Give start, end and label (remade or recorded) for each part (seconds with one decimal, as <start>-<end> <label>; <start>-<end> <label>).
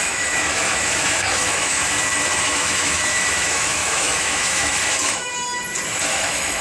0.0-1.8 remade; 1.8-2.4 recorded; 2.4-5.3 remade; 5.3-6.0 recorded; 6.0-6.6 remade